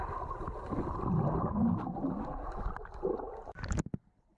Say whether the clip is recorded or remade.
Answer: recorded